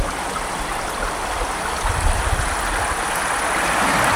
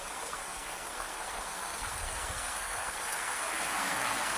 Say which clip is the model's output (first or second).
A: second